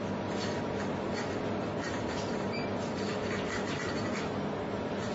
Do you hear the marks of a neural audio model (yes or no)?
no